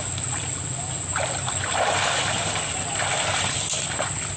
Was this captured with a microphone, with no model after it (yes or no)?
yes